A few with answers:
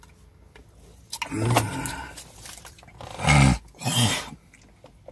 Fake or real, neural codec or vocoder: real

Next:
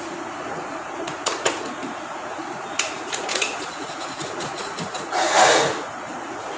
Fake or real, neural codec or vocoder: fake, vocoder, Vocos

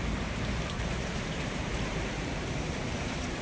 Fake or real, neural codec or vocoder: fake, vocoder, BigVGAN v2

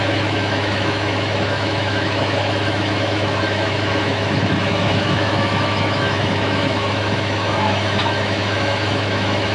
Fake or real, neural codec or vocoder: fake, autoencoder, DAC-VAE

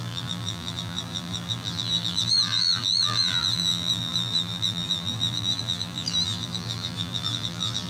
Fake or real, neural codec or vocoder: fake, vocoder, BigVGAN v2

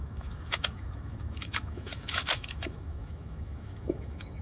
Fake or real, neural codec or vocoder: fake, autoencoder, DAC-VAE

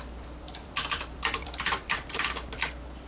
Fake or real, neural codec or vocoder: fake, vocoder, BigVGAN v2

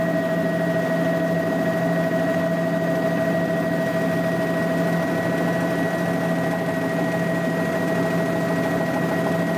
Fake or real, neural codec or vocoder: real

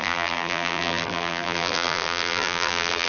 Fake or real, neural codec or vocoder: fake, vocoder, BigVGAN v2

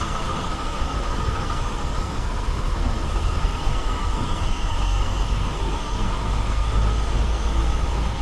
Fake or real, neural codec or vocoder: fake, codec, SNAC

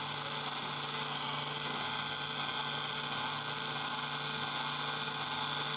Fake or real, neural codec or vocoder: real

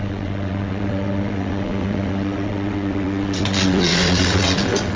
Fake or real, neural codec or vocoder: fake, vocoder, WaveNeXt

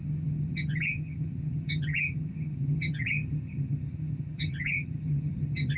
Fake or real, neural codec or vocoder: fake, vocoder, HiFi-GAN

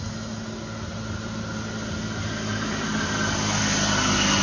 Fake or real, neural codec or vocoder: real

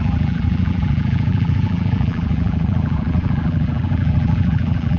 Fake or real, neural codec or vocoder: fake, vocoder, BigVGAN v2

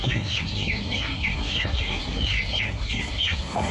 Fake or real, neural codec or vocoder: fake, codec, SNAC